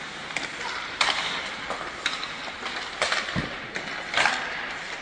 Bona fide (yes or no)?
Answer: yes